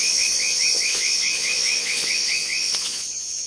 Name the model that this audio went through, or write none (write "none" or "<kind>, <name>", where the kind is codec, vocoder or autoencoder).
vocoder, Vocos